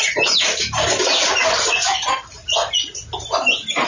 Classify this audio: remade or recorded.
recorded